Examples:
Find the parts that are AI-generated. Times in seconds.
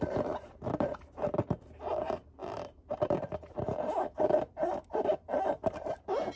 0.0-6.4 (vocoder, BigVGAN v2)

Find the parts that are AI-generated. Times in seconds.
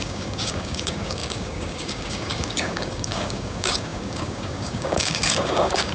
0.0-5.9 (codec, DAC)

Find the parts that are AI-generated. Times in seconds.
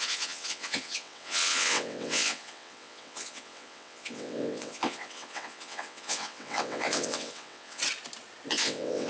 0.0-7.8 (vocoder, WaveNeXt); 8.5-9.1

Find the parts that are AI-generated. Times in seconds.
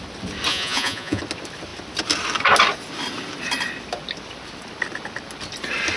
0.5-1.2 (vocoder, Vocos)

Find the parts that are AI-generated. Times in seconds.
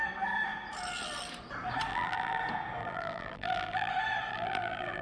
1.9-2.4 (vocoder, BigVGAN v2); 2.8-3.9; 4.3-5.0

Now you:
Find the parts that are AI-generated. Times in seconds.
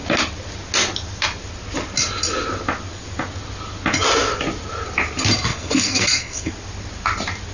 5.5-6.5 (codec, SNAC)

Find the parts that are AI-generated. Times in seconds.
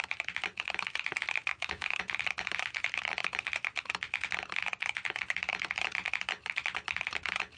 1.5-2.0 (autoencoder, DAC-VAE)